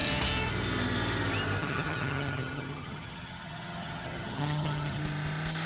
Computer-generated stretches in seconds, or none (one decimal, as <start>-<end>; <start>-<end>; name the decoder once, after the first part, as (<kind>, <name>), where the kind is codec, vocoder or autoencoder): 1.6-5.0 (vocoder, HiFi-GAN)